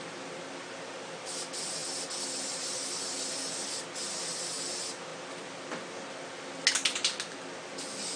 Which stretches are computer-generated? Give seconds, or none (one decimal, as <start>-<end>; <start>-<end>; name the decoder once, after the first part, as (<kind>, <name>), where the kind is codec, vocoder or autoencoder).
none